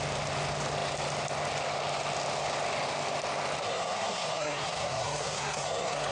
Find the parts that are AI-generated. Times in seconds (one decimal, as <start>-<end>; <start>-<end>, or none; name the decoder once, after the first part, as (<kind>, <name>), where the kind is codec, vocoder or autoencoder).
3.6-6.1 (codec, SNAC)